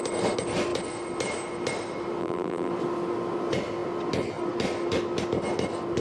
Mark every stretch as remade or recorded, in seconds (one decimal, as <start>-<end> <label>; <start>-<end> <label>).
0.0-2.2 recorded; 2.2-2.7 remade; 2.7-6.0 recorded